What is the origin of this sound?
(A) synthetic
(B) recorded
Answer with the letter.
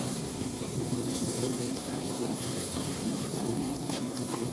A